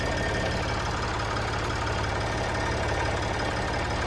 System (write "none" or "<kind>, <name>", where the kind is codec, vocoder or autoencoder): none